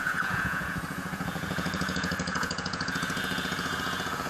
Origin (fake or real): fake